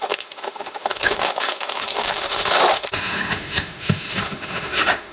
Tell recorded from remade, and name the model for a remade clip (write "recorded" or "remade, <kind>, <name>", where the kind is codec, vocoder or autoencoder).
remade, autoencoder, DAC-VAE